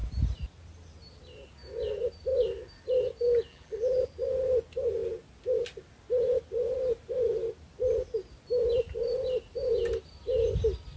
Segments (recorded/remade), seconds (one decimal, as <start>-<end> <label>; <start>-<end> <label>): 0.0-3.5 recorded; 3.5-4.1 remade; 4.1-11.0 recorded

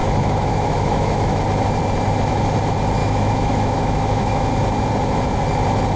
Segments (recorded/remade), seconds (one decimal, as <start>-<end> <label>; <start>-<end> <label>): 0.0-1.4 remade; 1.4-3.0 recorded; 3.0-4.5 remade; 4.5-6.0 recorded

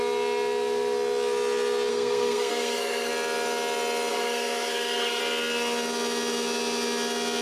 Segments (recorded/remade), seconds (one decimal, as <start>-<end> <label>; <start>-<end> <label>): 0.0-1.9 recorded; 1.9-3.1 remade; 3.1-4.1 recorded; 4.1-5.2 remade; 5.2-7.4 recorded

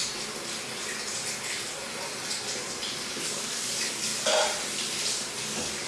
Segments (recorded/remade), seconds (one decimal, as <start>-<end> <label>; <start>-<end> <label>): 0.0-3.2 recorded; 3.2-4.1 remade; 4.1-5.5 recorded; 5.5-5.9 remade

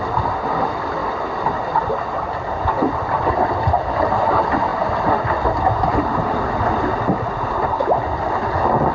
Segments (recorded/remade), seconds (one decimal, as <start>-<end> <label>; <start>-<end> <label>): 0.0-8.9 recorded

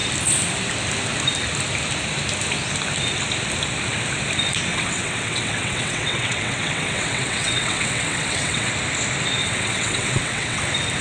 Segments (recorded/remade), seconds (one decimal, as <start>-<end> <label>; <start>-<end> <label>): 0.0-4.7 recorded; 4.7-8.7 remade; 8.7-9.4 recorded; 9.4-10.6 remade; 10.6-11.0 recorded